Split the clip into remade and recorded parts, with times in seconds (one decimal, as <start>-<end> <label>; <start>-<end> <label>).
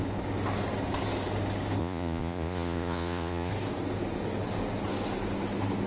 0.0-1.8 recorded; 1.8-3.5 remade; 3.5-5.9 recorded